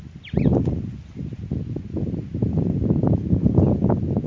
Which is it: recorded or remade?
recorded